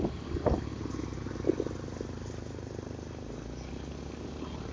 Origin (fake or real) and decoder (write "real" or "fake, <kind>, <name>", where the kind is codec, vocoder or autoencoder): real